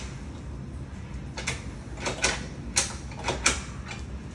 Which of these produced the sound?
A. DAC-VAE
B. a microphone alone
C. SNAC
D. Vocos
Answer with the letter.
B